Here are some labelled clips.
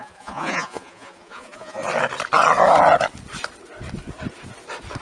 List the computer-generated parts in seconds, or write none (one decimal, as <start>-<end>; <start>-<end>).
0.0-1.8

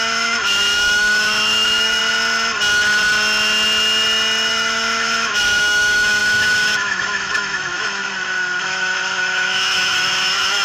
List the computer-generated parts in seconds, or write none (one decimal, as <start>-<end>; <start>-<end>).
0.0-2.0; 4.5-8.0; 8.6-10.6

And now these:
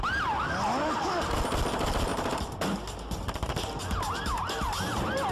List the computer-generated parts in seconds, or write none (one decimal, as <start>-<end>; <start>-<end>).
2.1-3.8